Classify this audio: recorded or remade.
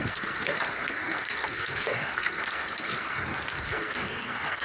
remade